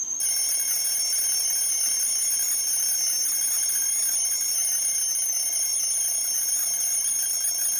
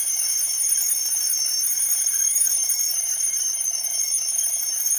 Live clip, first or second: first